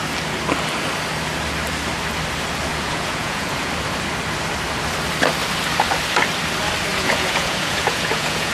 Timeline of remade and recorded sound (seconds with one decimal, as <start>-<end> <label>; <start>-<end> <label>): 0.0-2.7 recorded; 2.7-3.7 remade; 3.7-6.9 recorded; 6.9-8.5 remade